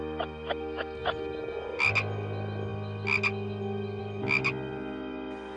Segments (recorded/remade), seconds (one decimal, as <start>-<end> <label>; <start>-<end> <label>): 0.0-5.6 recorded